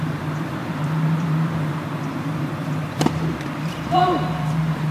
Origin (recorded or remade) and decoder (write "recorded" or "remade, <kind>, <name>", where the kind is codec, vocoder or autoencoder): remade, vocoder, BigVGAN v2